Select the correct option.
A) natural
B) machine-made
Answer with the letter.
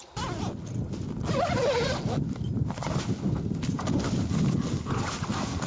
A